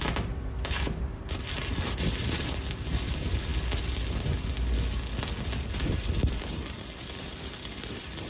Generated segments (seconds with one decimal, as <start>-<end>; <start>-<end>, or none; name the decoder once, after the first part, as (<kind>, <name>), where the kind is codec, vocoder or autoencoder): 0.0-3.5 (vocoder, BigVGAN v2); 5.6-8.3